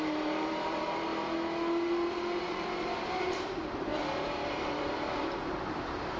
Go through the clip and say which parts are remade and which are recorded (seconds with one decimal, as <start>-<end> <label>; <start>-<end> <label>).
0.0-1.1 remade; 1.1-2.5 recorded; 2.5-3.9 remade; 3.9-4.7 recorded; 4.7-6.2 remade